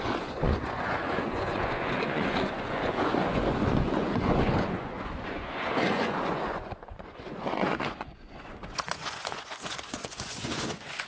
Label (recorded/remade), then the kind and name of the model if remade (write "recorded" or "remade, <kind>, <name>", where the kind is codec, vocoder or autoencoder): remade, vocoder, Vocos